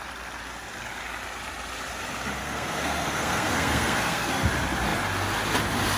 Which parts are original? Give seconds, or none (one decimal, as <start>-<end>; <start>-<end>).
0.0-2.4; 4.5-6.0